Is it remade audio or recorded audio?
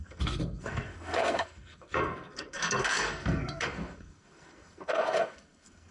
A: remade